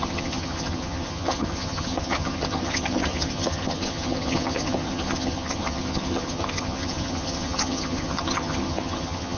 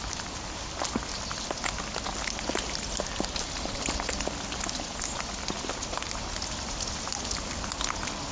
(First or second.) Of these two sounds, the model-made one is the first